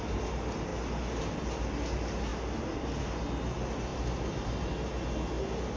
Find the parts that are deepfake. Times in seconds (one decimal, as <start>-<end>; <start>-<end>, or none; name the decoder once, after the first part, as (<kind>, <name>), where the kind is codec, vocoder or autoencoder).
2.3-3.0 (vocoder, BigVGAN v2); 3.9-4.5